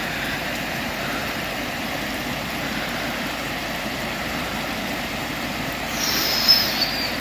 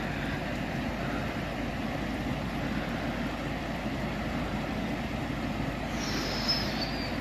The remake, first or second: first